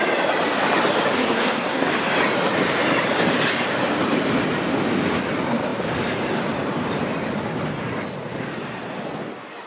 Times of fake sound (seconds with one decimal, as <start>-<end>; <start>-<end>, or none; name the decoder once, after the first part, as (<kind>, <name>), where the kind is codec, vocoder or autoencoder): 1.2-1.9 (codec, SNAC)